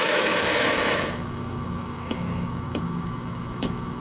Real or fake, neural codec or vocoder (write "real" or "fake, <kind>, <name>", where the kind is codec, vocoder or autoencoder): fake, autoencoder, DAC-VAE